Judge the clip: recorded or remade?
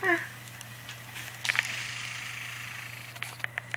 recorded